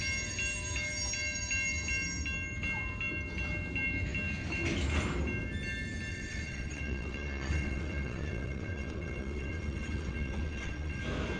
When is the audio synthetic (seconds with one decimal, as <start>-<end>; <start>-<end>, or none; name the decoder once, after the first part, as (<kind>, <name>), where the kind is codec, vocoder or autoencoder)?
6.1-11.0 (vocoder, WaveNeXt)